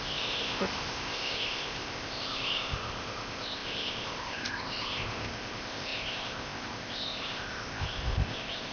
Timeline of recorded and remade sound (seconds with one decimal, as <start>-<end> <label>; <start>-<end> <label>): 0.0-8.7 remade